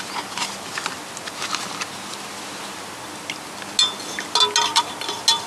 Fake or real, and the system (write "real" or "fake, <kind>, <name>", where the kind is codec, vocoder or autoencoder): real